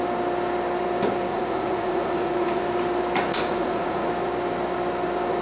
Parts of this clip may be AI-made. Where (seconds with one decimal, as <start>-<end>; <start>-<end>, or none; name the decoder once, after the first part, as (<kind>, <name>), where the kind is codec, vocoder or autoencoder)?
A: 1.3-2.6 (vocoder, Vocos); 3.3-4.1